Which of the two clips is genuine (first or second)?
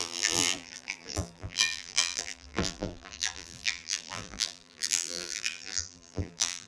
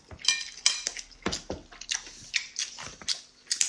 second